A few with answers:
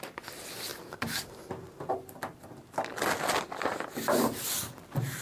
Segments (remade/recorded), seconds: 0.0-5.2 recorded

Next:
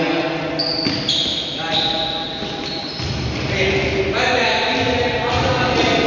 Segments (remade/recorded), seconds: 0.0-6.1 recorded

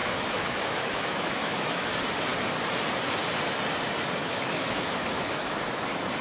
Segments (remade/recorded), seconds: 0.0-1.9 remade; 1.9-4.2 recorded; 4.2-5.6 remade; 5.6-6.2 recorded

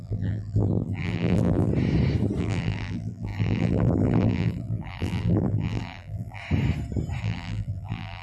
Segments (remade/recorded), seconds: 0.0-1.7 remade; 1.7-2.4 recorded; 2.4-6.4 remade; 6.4-7.2 recorded; 7.2-8.2 remade